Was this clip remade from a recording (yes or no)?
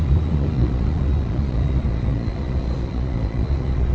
yes